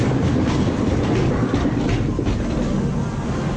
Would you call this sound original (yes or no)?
yes